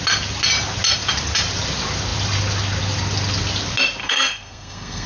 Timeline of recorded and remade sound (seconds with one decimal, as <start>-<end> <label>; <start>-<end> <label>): 0.0-4.0 recorded; 4.0-5.1 remade